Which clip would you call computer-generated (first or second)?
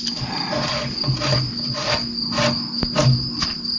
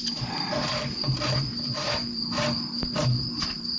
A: second